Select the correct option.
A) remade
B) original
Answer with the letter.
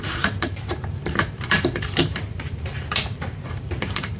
A